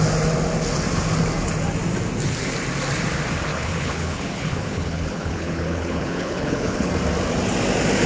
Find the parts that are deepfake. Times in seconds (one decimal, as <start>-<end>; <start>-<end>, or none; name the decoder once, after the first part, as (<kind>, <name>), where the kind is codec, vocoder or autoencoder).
3.5-6.9 (codec, HILCodec)